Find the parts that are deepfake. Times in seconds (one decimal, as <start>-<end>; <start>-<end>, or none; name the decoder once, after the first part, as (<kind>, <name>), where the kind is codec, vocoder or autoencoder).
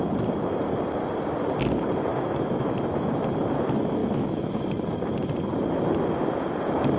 2.1-3.1 (autoencoder, DAC-VAE); 4.0-4.5